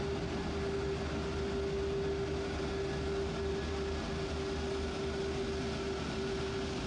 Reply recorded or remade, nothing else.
recorded